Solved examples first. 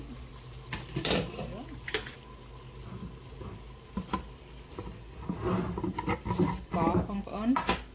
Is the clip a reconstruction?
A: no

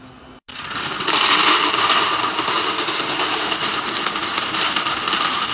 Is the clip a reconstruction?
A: no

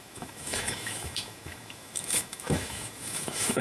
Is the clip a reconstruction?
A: yes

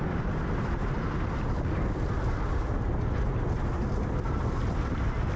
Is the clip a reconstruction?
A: no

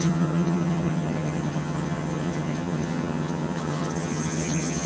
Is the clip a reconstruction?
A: yes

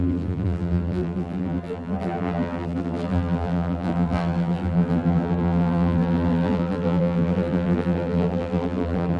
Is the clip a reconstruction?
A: yes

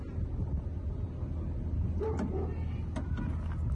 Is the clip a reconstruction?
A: no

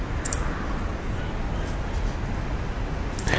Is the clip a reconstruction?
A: no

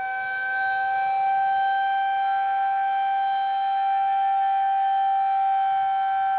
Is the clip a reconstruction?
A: no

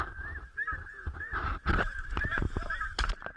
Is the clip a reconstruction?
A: yes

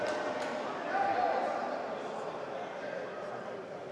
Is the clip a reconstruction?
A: no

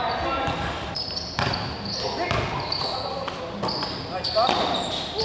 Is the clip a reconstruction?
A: no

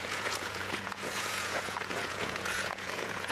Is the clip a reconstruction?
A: yes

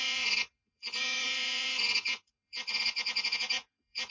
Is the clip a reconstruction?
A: yes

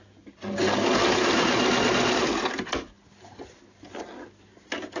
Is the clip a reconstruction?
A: no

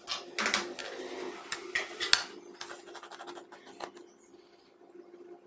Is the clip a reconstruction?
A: no